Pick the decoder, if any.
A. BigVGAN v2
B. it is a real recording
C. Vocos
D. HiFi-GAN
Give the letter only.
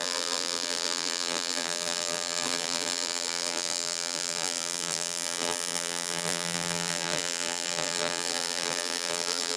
A